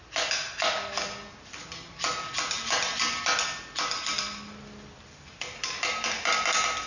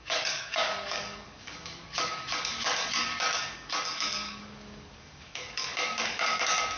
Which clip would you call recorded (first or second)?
first